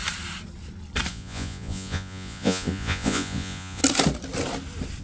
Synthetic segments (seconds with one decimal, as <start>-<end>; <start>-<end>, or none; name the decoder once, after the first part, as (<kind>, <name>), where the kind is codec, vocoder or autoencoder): 1.1-3.8 (vocoder, Vocos)

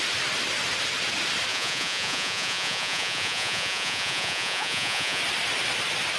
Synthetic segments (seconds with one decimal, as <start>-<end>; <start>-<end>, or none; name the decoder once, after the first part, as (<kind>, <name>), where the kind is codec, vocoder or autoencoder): 1.5-5.2 (vocoder, Vocos)

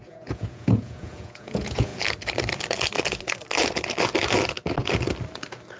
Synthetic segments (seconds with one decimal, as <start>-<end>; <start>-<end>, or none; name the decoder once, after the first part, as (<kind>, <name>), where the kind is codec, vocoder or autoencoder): 0.0-1.9 (vocoder, Vocos)

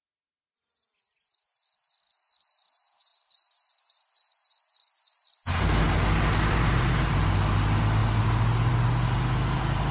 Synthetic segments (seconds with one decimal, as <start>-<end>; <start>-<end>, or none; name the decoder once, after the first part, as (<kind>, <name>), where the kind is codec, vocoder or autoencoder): none